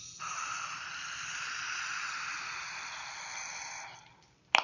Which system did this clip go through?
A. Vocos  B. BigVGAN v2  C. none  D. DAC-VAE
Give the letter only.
C